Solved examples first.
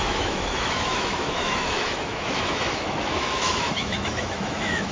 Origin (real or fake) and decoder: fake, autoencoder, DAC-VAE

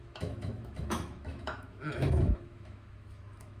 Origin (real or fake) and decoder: fake, autoencoder, DAC-VAE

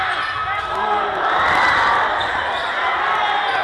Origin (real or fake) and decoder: real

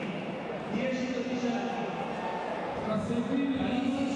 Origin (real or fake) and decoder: real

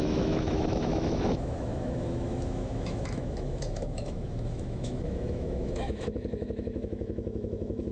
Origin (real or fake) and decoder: fake, autoencoder, DAC-VAE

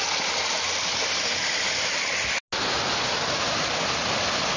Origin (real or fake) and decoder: real